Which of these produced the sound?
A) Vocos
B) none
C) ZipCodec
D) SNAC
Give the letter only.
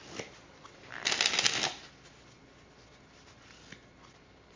B